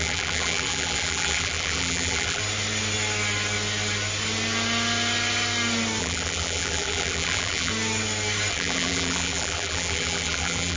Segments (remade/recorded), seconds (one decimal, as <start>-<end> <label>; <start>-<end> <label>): 0.0-2.4 remade; 2.4-6.0 recorded; 6.0-7.7 remade; 7.7-8.5 recorded; 8.5-10.8 remade